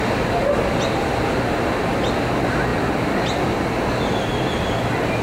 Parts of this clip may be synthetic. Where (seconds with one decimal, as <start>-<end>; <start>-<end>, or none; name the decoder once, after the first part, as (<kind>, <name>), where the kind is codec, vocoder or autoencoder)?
none